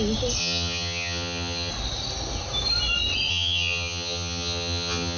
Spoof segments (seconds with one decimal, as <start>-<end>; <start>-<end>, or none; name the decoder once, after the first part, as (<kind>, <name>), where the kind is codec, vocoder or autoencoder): 0.4-1.7 (vocoder, HiFi-GAN); 3.3-5.2